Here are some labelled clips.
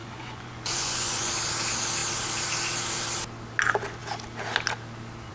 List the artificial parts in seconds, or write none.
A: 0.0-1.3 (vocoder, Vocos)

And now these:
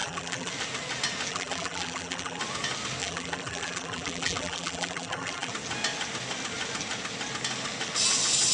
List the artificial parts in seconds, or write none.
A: 0.0-0.5 (vocoder, BigVGAN v2); 1.3-2.4; 3.0-5.5